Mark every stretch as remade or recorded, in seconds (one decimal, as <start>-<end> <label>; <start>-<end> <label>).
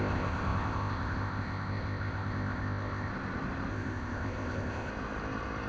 0.0-3.1 remade; 3.1-3.7 recorded; 3.7-4.9 remade; 4.9-5.7 recorded